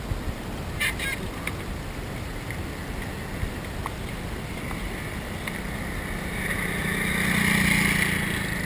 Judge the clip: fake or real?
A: real